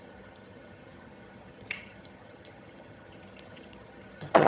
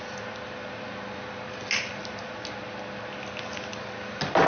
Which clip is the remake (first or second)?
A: first